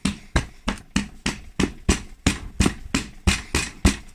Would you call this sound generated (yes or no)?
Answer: no